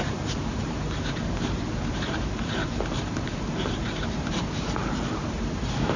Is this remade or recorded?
remade